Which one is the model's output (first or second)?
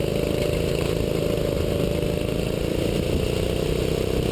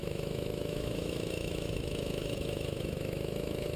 second